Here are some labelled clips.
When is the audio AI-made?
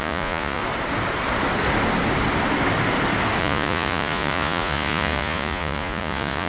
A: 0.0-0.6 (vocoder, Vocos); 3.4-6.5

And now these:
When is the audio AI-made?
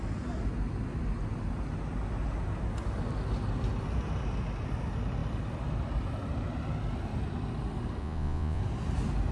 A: 8.0-8.6 (vocoder, Vocos)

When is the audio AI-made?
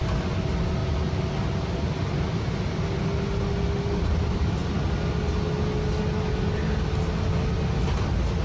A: none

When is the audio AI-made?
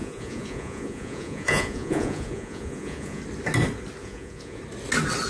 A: 0.0-3.2 (vocoder, Vocos); 4.0-4.6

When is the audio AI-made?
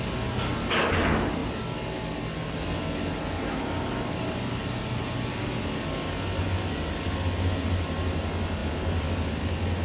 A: none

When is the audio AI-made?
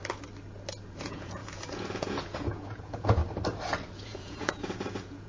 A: 0.7-3.2 (vocoder, Vocos); 3.8-5.3